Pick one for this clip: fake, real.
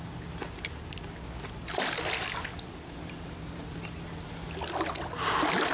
real